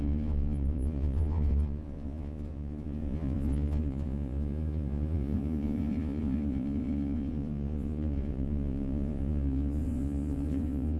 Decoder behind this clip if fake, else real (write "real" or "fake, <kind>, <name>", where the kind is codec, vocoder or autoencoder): fake, vocoder, Vocos